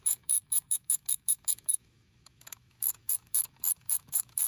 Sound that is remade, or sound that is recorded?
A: remade